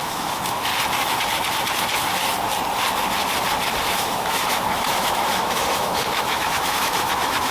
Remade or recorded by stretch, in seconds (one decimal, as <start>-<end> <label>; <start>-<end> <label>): 0.0-0.7 remade; 0.7-3.8 recorded; 3.8-7.5 remade